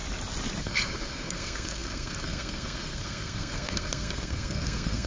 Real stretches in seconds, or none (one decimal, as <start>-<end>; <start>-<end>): 0.0-0.6